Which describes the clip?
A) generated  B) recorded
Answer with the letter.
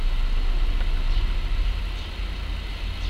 B